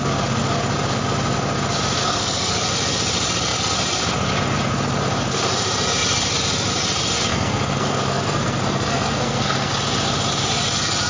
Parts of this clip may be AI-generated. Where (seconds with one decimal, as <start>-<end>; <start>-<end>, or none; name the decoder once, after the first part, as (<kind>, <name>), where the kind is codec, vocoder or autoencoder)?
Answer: 2.0-2.7 (codec, SNAC); 7.3-9.7